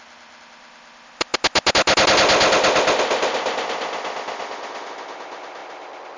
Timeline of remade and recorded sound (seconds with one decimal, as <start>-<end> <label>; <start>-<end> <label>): 0.0-6.2 recorded